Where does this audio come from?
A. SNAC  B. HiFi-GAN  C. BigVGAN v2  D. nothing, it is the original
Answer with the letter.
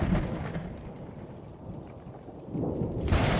C